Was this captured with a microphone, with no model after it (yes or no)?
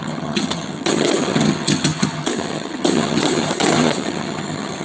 no